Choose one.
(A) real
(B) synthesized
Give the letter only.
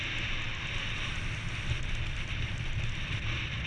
A